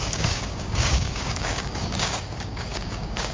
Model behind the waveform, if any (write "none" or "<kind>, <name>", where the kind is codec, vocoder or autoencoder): codec, DAC